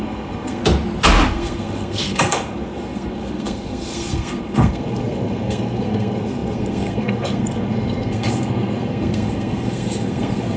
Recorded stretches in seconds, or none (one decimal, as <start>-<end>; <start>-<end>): 0.6-1.3